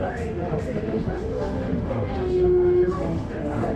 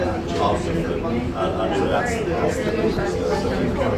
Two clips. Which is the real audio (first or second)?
second